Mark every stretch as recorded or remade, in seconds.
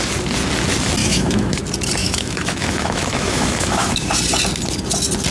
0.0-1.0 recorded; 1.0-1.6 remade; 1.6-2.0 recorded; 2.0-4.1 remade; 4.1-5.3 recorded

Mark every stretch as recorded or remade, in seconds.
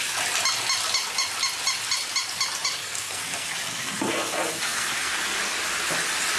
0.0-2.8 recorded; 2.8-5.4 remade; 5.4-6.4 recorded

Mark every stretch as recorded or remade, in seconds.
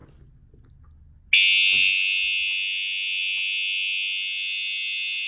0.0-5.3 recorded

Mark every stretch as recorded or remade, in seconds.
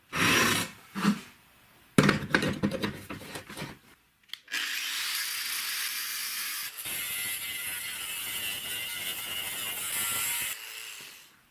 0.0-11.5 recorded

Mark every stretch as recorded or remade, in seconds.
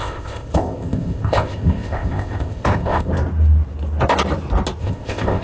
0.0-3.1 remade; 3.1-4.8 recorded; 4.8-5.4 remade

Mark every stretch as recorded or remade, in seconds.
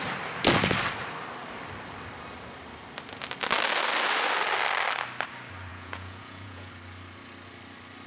0.0-5.7 recorded; 5.7-6.7 remade; 6.7-8.1 recorded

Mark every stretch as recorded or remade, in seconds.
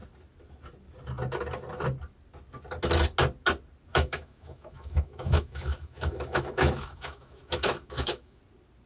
0.0-3.9 recorded; 3.9-8.4 remade; 8.4-8.9 recorded